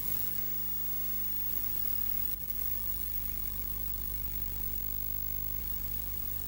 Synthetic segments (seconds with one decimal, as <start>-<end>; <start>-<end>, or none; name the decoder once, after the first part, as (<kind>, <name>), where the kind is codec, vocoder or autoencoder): 0.0-0.4 (vocoder, Vocos); 1.5-4.8; 5.6-6.5